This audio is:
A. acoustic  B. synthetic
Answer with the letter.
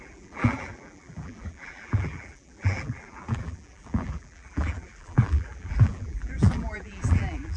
B